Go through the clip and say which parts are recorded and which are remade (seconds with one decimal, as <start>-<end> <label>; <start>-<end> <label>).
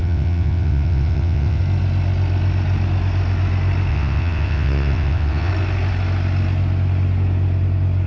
0.0-1.6 remade; 1.6-3.9 recorded; 3.9-5.5 remade; 5.5-8.1 recorded